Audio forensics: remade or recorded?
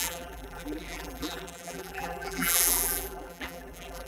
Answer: remade